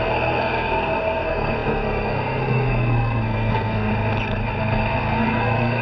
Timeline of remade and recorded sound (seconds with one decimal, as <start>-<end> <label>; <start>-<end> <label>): 0.0-3.9 remade; 3.9-4.6 recorded; 4.6-5.8 remade

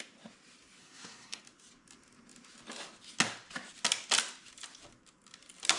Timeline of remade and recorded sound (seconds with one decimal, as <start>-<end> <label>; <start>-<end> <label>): 0.0-0.8 recorded; 0.8-1.4 remade; 1.4-5.8 recorded

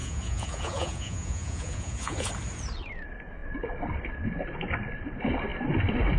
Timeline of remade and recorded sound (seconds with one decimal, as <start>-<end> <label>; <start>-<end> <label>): 0.0-2.3 remade; 2.3-6.2 recorded

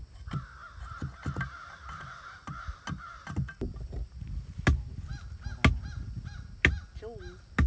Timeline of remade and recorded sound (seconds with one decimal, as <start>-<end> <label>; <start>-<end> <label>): 0.0-7.7 recorded

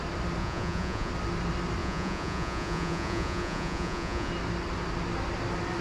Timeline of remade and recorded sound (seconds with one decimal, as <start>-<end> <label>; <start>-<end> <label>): 0.0-0.4 recorded; 0.4-1.1 remade; 1.1-1.8 recorded; 1.8-4.3 remade; 4.3-5.8 recorded

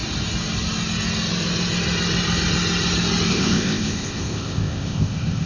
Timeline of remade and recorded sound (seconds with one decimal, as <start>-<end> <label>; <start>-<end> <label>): 0.0-3.3 recorded; 3.3-5.5 remade